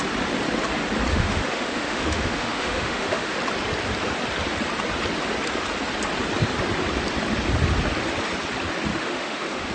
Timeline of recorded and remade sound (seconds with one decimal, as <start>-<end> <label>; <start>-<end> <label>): 0.0-1.1 recorded; 1.1-3.4 remade; 3.4-8.9 recorded; 8.9-9.7 remade